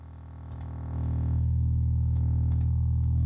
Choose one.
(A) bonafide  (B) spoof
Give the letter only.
A